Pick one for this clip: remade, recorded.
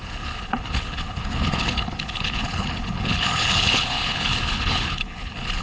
remade